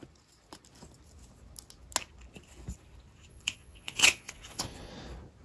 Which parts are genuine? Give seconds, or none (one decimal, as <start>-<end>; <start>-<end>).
0.0-3.3; 4.9-5.4